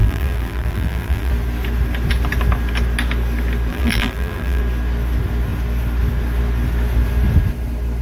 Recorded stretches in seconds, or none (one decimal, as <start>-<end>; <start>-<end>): 1.3-3.7; 4.6-8.0